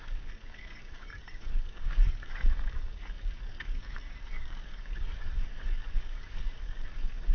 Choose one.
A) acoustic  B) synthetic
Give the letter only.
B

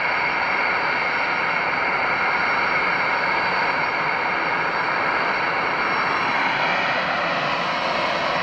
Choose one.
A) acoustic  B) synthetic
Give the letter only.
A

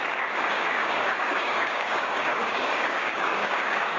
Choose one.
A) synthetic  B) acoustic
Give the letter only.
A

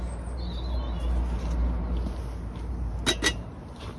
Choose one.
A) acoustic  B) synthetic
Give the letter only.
A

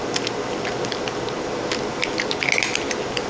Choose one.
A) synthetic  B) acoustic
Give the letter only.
B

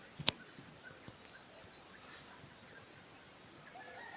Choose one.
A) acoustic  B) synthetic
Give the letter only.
A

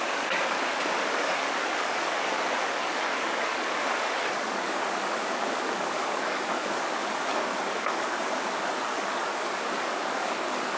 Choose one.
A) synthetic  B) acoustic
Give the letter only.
A